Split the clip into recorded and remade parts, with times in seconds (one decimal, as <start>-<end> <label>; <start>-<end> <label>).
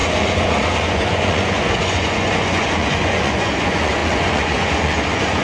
0.0-5.4 remade